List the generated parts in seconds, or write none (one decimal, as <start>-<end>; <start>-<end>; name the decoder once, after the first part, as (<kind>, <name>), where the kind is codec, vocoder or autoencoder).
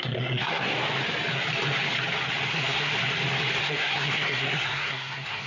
0.0-0.7 (codec, SNAC); 2.5-2.9; 3.6-5.5